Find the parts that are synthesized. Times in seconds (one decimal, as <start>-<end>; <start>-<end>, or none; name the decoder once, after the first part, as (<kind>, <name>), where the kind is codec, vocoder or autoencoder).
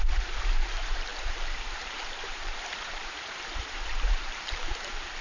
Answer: 0.0-5.2 (vocoder, BigVGAN v2)